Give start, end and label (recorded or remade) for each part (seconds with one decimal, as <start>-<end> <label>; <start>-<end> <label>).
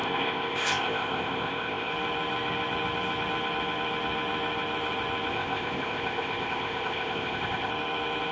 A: 0.0-1.9 remade; 1.9-5.3 recorded; 5.3-7.7 remade; 7.7-8.3 recorded